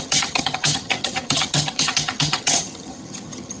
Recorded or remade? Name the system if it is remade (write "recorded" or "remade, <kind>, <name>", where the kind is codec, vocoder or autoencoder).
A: remade, vocoder, HiFi-GAN